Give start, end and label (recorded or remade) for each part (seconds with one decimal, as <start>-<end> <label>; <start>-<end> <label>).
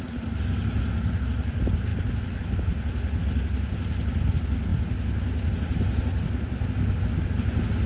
0.0-7.9 recorded